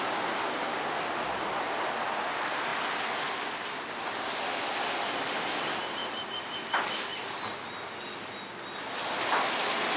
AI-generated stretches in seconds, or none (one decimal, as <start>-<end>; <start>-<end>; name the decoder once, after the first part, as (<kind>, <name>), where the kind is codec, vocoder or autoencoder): none